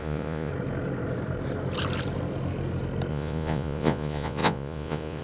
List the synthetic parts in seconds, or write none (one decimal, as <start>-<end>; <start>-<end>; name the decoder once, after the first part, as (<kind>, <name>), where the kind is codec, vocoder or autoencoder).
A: 0.0-0.5 (vocoder, Vocos); 3.1-5.2